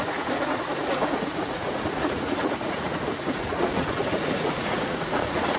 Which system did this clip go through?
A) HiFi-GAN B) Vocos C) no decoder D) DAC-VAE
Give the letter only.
B